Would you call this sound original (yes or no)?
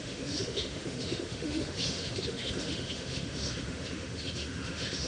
no